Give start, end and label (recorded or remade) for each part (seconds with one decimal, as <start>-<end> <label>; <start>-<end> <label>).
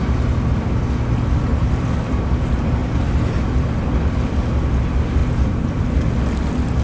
0.0-1.5 recorded; 1.5-2.2 remade; 2.2-2.8 recorded; 2.8-4.4 remade; 4.4-5.2 recorded; 5.2-5.8 remade; 5.8-6.8 recorded